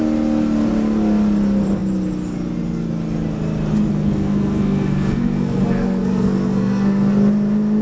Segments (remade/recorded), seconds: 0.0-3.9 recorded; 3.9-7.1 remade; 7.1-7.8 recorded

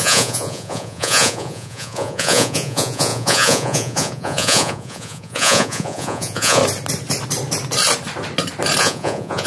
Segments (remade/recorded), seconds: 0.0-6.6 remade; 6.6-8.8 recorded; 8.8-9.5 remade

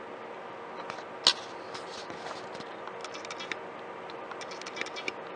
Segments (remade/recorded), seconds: 0.0-5.4 recorded

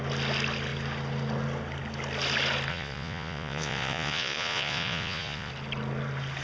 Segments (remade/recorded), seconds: 0.0-2.7 recorded; 2.7-5.5 remade; 5.5-6.4 recorded

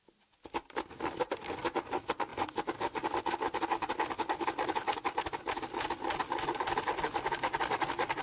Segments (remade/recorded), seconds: 0.0-8.2 recorded

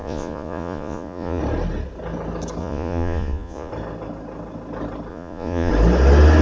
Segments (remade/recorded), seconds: 0.0-1.4 remade; 1.4-2.6 recorded; 2.6-3.7 remade; 3.7-5.1 recorded; 5.1-5.7 remade; 5.7-6.4 recorded

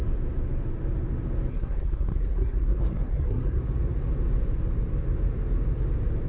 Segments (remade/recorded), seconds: 0.0-1.5 recorded; 1.5-3.6 remade; 3.6-6.3 recorded